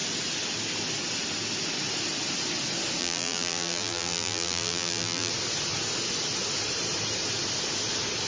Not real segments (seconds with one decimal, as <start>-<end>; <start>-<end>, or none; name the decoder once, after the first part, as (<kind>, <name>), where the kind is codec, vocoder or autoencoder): 3.0-5.3 (vocoder, BigVGAN v2)